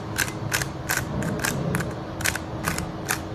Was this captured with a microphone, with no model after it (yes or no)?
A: yes